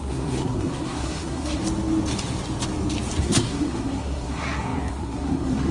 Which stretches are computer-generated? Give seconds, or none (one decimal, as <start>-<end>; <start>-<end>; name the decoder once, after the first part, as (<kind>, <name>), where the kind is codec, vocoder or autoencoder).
0.0-1.6 (codec, SNAC); 3.2-5.7